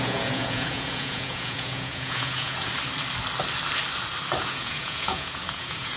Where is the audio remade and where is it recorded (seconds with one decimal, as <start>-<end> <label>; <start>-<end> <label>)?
0.0-2.7 remade; 2.7-4.4 recorded; 4.4-6.0 remade